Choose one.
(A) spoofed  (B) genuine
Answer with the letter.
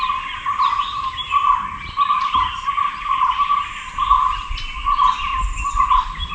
B